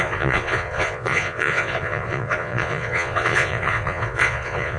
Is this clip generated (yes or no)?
yes